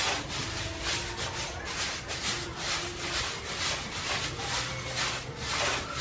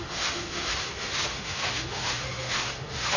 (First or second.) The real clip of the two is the first